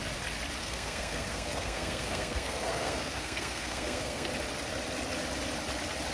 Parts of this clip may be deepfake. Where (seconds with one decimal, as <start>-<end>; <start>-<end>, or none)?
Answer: 0.6-4.3